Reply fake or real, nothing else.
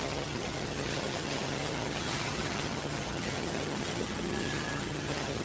fake